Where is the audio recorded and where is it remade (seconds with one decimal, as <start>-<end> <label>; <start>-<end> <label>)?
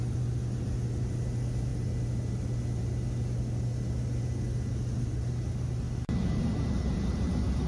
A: 0.0-7.7 recorded